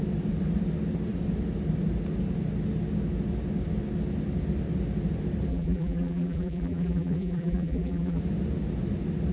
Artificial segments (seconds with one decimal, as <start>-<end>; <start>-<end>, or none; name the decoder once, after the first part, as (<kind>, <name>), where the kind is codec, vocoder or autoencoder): 5.5-8.2 (vocoder, BigVGAN v2)